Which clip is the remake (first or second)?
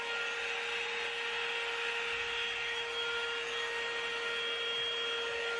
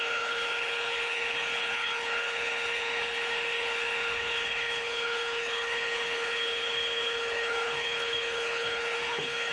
second